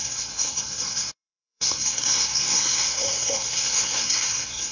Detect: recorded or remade remade